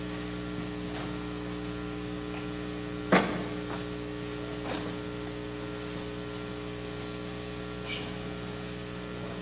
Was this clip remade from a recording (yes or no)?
no